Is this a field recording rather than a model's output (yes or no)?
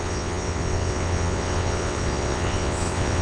no